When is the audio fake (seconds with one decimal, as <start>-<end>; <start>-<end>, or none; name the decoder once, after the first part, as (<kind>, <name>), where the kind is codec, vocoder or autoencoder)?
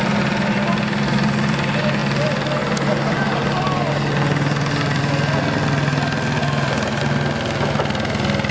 6.4-7.0 (vocoder, BigVGAN v2)